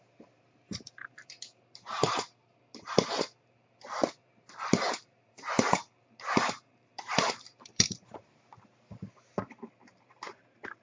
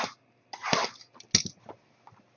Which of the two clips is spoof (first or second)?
first